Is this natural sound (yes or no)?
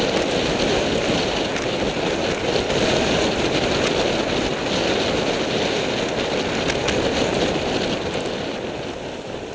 yes